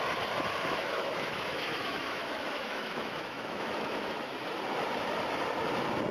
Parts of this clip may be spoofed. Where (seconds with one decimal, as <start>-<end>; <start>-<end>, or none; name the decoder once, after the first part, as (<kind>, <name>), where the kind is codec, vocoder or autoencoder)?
0.6-4.3 (autoencoder, DAC-VAE)